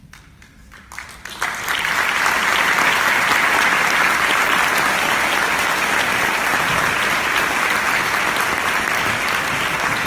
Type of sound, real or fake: real